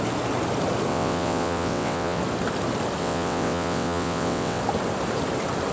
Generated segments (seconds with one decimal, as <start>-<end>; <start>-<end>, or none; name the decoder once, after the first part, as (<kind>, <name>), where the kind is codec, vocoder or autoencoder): 0.9-2.2 (vocoder, WaveNeXt); 3.0-4.6

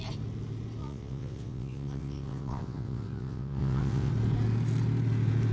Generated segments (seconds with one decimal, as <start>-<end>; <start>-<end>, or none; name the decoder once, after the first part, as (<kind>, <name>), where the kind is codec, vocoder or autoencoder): 0.8-4.1 (vocoder, WaveNeXt)

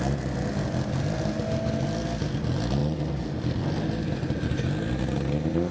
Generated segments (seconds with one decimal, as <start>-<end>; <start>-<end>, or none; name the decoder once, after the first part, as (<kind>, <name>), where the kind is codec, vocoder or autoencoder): none

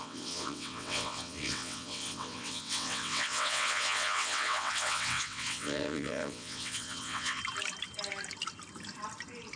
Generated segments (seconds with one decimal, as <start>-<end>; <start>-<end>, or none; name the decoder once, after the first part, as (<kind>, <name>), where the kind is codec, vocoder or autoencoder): 0.0-7.4 (vocoder, WaveNeXt)

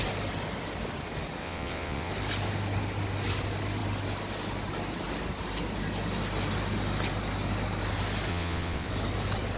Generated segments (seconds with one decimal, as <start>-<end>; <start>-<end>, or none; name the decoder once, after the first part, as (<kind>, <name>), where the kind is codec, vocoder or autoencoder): 1.4-2.1 (vocoder, WaveNeXt); 8.3-8.9